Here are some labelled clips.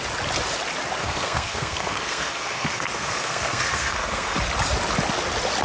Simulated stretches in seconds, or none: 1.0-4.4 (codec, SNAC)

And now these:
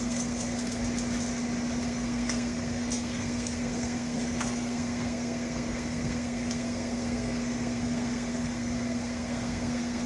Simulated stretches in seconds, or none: 0.0-0.8 (codec, SNAC); 1.8-10.1

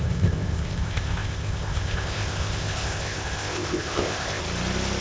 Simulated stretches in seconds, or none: 0.0-4.4 (codec, ZipCodec)